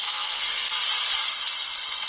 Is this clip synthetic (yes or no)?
no